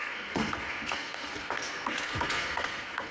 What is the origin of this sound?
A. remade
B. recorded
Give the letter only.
A